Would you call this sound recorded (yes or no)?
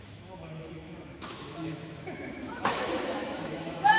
no